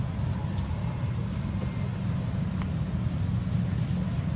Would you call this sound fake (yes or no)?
no